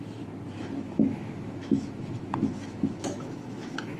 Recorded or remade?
remade